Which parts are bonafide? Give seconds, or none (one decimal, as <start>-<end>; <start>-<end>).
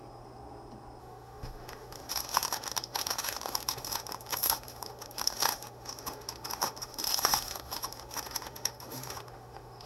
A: 0.0-1.0